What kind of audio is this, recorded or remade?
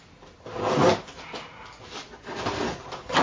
recorded